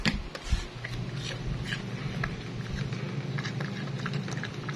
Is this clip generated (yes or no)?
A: no